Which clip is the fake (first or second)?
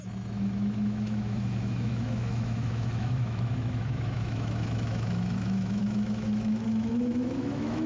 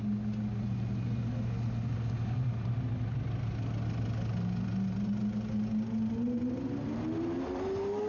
first